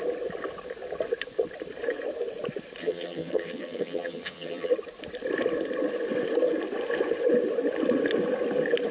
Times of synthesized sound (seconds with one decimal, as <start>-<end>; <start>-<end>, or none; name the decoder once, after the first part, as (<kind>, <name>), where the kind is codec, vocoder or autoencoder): 2.8-4.7 (vocoder, HiFi-GAN)